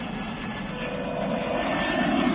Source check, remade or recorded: recorded